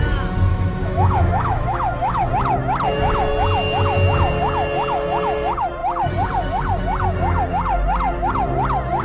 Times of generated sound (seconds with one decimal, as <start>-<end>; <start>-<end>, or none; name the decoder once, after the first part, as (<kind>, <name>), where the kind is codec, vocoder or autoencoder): 0.5-2.3 (autoencoder, DAC-VAE)